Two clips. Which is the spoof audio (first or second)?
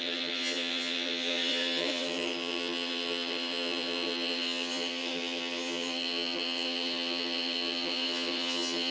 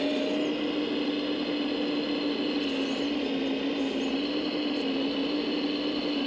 first